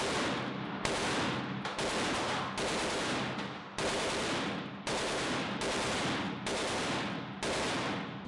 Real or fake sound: real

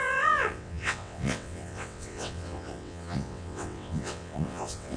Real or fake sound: fake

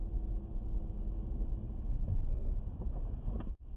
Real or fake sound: real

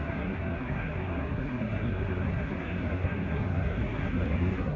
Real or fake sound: fake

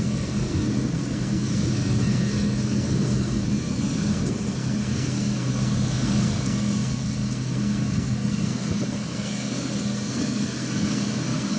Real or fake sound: fake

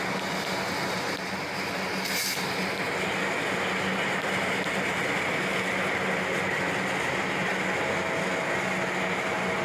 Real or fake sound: real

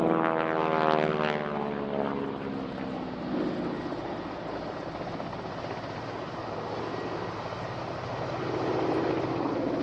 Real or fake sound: real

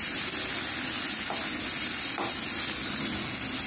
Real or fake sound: real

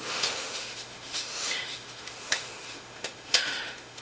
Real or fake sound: fake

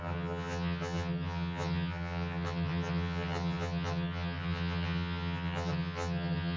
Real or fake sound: fake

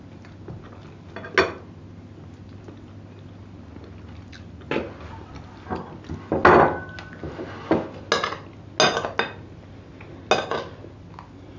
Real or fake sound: real